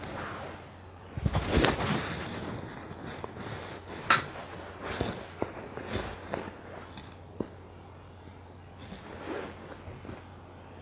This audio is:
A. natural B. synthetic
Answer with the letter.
A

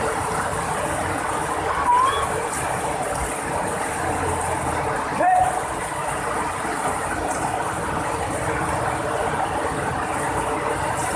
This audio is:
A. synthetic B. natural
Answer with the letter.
B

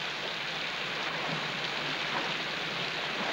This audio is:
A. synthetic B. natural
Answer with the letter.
B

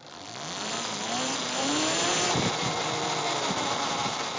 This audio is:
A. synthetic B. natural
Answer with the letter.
B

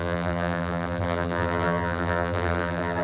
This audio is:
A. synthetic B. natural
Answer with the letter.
A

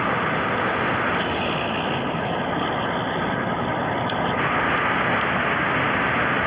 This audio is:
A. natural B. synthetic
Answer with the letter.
A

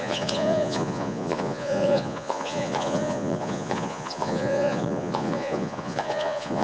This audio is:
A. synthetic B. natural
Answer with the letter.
A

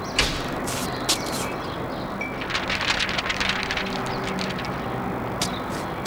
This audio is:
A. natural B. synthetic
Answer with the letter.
A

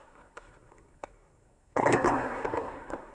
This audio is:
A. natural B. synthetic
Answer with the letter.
B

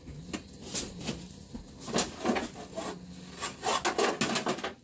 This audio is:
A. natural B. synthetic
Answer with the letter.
A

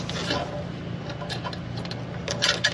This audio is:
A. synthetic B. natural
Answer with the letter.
B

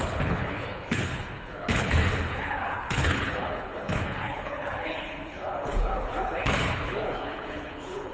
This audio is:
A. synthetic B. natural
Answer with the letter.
A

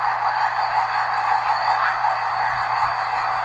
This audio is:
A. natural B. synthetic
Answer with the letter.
A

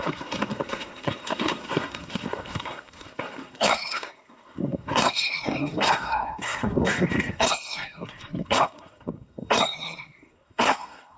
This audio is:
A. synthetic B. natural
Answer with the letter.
A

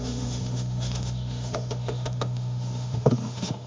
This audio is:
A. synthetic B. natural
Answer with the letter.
A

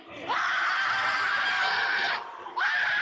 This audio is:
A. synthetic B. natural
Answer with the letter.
B